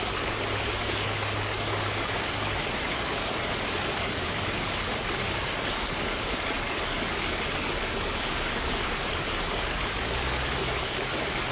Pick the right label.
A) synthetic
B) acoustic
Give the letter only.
A